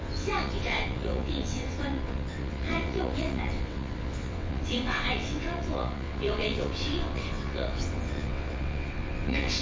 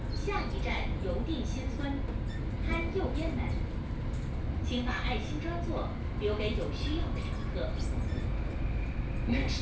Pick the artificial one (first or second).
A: first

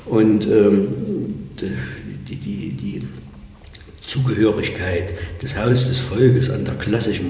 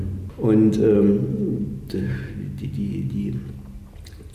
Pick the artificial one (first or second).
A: first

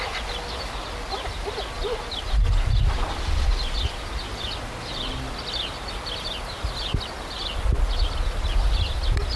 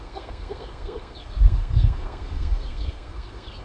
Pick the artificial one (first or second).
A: second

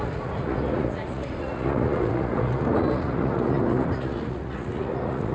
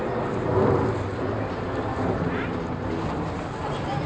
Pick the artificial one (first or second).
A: first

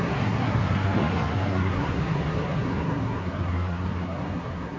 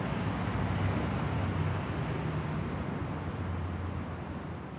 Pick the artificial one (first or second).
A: first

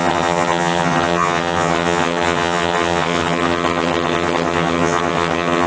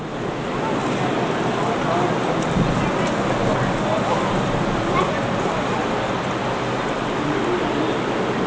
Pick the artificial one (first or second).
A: first